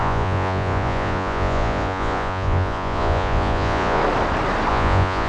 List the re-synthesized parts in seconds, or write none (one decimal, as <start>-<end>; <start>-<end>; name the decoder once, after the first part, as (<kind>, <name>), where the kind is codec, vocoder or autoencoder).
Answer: 0.0-4.0 (vocoder, Vocos); 4.7-5.3